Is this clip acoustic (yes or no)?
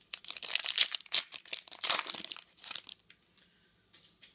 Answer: no